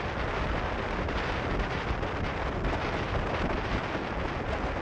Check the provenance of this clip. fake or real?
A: real